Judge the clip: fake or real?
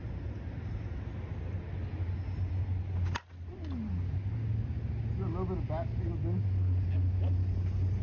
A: real